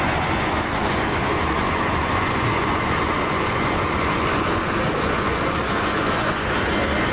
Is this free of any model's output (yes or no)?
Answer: no